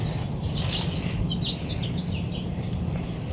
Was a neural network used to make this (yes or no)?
no